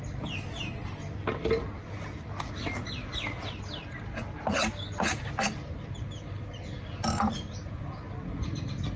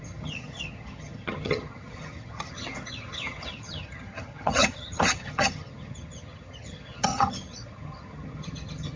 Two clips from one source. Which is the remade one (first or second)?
second